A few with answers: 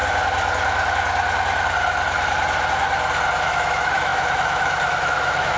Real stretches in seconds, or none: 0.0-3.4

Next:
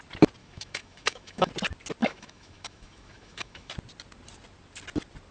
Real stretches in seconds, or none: 0.0-0.4; 1.5-2.0; 3.7-5.3